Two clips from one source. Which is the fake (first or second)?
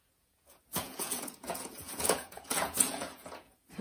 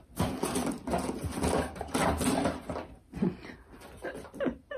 first